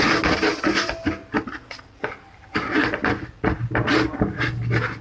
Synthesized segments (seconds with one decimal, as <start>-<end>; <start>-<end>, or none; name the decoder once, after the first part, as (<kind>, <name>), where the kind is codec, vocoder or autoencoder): none